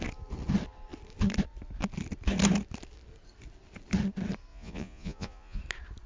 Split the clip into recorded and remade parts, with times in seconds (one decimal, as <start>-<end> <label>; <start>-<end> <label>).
0.0-4.5 recorded; 4.5-5.6 remade; 5.6-6.1 recorded